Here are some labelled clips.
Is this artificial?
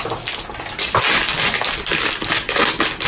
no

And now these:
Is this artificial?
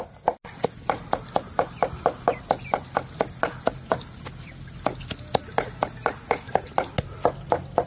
no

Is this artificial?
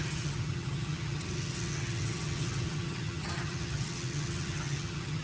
yes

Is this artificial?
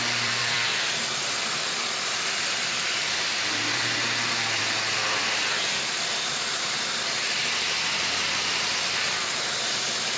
yes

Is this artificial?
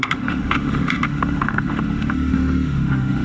yes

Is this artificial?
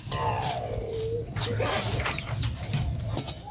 no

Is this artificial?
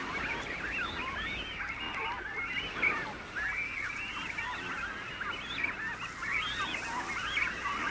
no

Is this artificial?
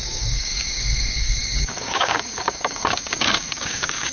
yes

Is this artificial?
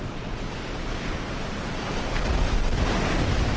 no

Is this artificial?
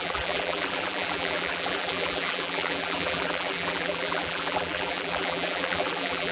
yes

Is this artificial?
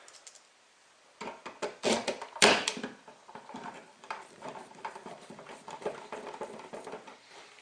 yes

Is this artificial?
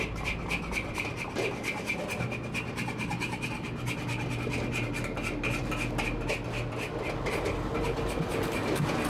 no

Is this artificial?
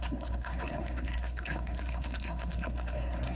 yes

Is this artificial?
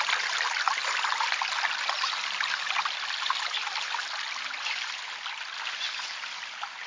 no